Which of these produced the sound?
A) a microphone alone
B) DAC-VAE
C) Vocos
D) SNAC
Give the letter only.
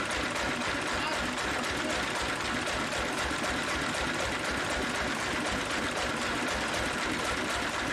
A